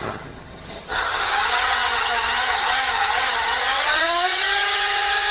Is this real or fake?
fake